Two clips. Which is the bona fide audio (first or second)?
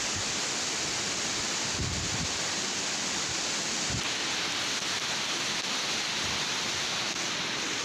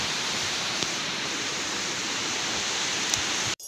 first